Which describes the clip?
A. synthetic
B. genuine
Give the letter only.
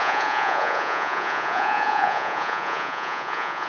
A